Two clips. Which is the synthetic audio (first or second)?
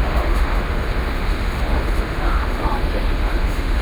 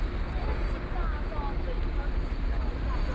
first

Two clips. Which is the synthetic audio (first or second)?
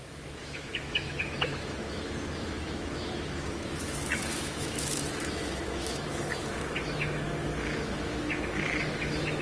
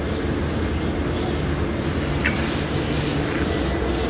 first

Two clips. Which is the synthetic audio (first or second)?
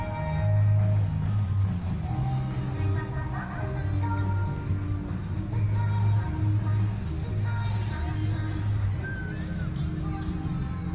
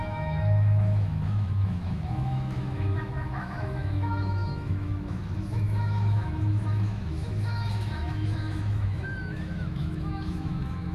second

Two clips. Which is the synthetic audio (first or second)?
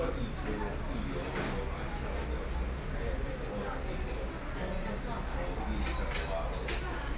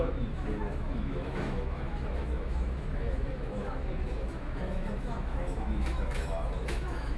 second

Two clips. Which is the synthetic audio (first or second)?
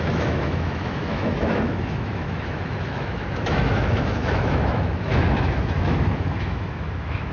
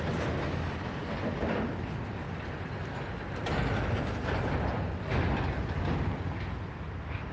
first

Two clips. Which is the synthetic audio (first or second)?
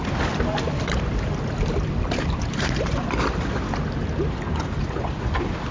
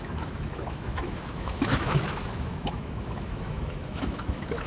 second